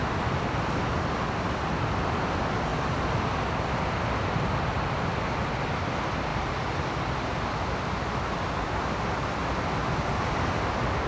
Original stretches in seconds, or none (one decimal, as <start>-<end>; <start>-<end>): 0.0-11.1